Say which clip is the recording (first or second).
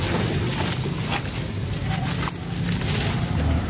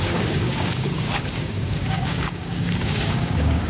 first